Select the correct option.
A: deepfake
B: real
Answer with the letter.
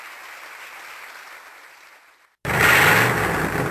B